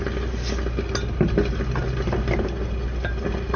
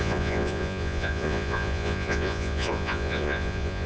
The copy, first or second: second